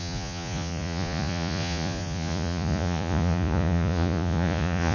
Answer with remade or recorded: remade